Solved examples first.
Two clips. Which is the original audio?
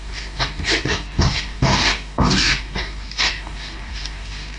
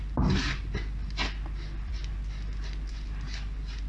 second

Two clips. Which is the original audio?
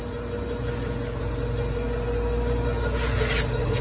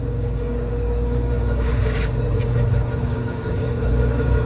first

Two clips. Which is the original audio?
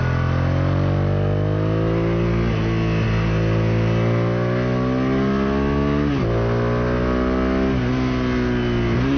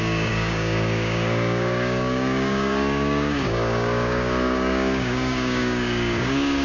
first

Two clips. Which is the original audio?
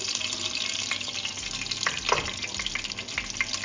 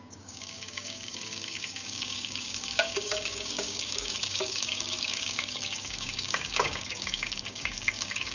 first